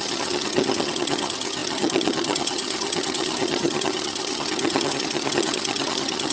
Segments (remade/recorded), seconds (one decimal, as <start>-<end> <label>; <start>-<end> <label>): 0.0-6.3 remade